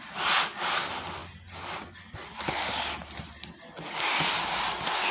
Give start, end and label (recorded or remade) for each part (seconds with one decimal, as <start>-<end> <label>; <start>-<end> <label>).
0.0-1.2 recorded; 1.2-4.3 remade; 4.3-5.1 recorded